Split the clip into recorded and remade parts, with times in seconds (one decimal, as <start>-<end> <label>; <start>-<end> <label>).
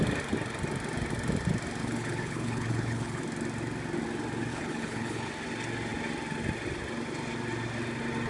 0.0-1.8 recorded; 1.8-3.2 remade; 3.2-4.5 recorded; 4.5-5.3 remade; 5.3-8.3 recorded